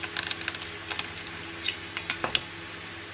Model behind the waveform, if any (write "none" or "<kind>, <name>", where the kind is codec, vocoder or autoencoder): none